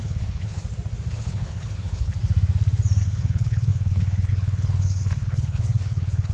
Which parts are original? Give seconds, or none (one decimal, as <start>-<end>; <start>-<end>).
0.6-1.1; 2.1-3.0